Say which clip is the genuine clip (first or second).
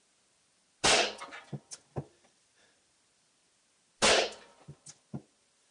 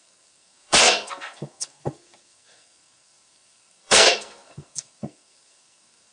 first